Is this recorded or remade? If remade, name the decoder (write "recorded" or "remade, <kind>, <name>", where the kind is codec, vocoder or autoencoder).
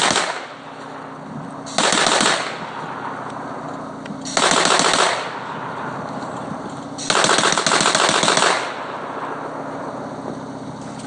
recorded